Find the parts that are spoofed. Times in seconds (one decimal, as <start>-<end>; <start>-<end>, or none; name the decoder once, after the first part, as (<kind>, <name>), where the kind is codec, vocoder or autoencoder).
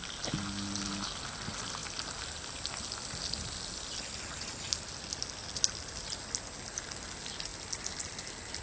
none